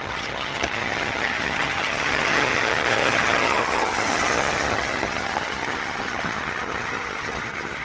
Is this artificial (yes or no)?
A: yes